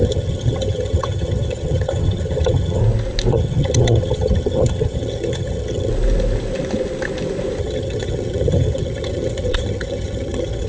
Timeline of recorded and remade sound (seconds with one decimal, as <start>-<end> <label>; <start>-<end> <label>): 0.0-2.8 remade; 2.8-3.3 recorded; 3.3-5.9 remade; 5.9-7.6 recorded; 7.6-10.7 remade